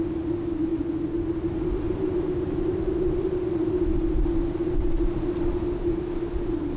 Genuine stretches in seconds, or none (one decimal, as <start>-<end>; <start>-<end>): 0.0-6.8